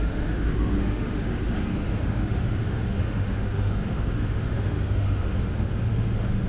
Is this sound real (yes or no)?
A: no